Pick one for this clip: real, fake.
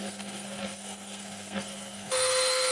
fake